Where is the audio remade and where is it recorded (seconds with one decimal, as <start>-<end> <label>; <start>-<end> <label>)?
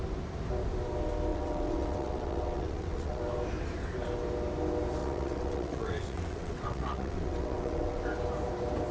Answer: 0.0-1.3 recorded; 1.3-3.2 remade; 3.2-5.0 recorded; 5.0-8.0 remade; 8.0-8.9 recorded